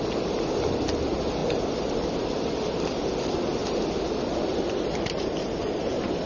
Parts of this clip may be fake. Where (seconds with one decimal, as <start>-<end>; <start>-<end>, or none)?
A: none